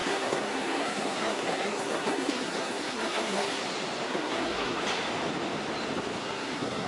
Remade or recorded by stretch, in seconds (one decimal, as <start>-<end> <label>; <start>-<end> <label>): 0.0-3.6 remade; 3.6-4.1 recorded; 4.1-4.8 remade; 4.8-6.2 recorded; 6.2-6.9 remade